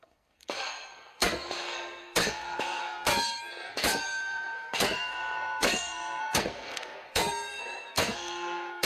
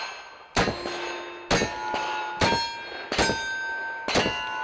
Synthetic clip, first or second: first